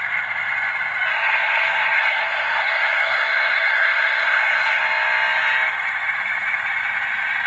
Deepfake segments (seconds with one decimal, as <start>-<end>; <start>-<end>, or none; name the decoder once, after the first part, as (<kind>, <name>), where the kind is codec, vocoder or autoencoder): 1.1-4.8 (codec, SNAC)